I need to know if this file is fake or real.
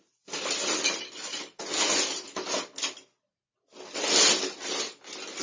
real